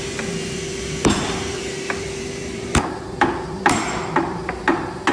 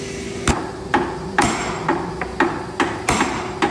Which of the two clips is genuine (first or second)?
second